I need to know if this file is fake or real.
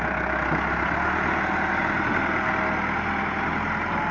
real